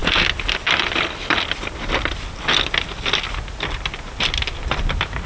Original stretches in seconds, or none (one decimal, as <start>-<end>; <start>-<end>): 0.0-5.3